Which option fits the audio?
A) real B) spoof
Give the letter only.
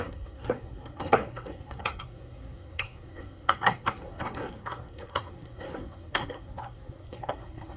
B